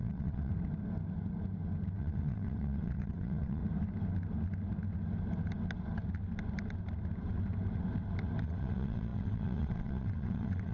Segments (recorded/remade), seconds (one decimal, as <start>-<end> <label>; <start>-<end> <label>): 0.0-0.5 remade; 0.5-2.0 recorded; 2.0-3.6 remade; 3.6-8.4 recorded; 8.4-10.7 remade